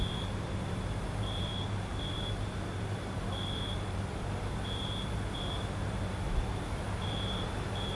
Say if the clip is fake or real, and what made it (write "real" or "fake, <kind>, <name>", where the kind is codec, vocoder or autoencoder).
fake, vocoder, BigVGAN v2